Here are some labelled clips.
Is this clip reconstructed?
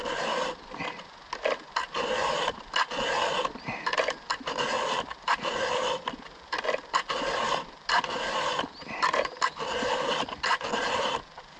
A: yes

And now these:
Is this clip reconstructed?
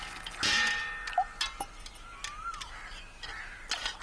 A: no